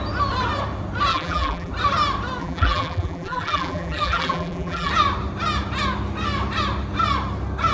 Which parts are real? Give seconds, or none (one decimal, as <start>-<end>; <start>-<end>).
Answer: 0.0-1.1; 1.7-2.4; 4.9-7.7